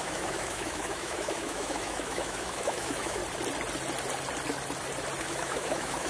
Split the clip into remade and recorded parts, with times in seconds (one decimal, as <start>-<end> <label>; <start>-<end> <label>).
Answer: 0.0-3.2 remade; 3.2-5.2 recorded; 5.2-6.1 remade